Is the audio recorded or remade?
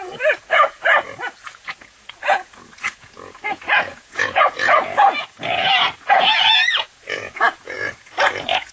remade